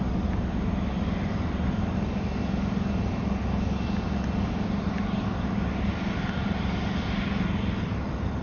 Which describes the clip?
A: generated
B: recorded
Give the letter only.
B